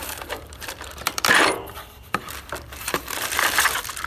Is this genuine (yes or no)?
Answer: no